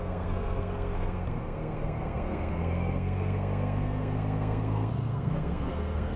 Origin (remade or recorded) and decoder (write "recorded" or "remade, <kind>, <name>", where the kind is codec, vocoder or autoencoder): remade, codec, SNAC